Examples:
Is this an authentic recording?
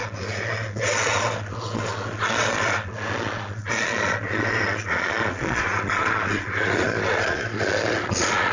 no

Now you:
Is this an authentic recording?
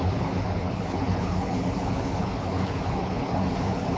no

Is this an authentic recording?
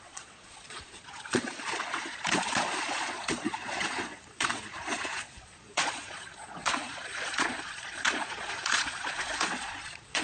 no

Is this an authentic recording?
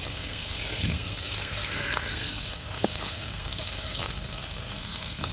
no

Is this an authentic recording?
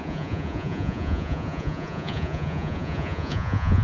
no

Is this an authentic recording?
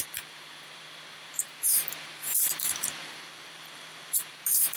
no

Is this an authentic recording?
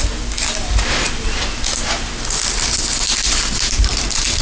yes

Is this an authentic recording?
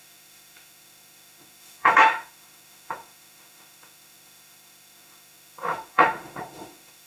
no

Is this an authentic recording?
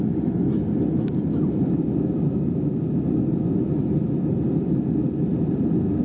yes